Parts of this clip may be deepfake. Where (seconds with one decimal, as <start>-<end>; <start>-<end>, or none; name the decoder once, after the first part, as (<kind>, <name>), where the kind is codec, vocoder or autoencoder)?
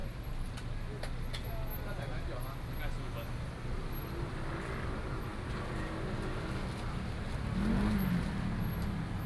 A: none